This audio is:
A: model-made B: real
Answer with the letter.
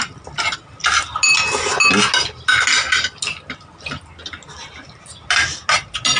B